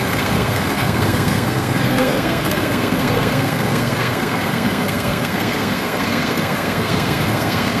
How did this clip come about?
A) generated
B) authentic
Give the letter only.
A